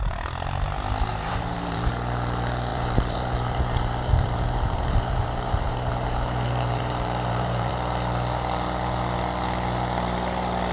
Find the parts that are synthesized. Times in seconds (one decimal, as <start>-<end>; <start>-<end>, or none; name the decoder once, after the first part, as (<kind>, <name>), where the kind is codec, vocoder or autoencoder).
1.1-1.9 (vocoder, BigVGAN v2); 2.7-7.7